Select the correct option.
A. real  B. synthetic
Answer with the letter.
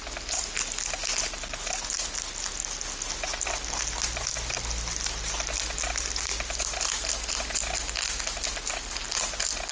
A